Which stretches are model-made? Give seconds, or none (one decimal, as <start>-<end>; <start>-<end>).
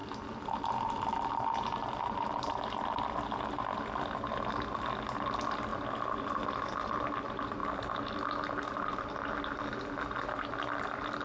none